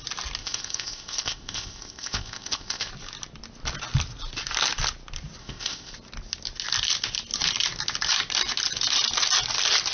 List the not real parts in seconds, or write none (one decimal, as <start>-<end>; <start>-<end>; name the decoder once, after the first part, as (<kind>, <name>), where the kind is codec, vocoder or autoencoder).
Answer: 0.4-2.9 (codec, ZipCodec); 5.4-5.9